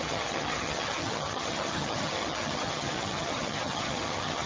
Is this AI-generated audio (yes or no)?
yes